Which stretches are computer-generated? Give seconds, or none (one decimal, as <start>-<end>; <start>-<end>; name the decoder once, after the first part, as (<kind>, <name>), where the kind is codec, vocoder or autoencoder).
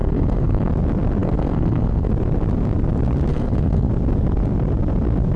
0.0-0.7 (codec, SNAC); 1.2-2.1; 3.3-3.9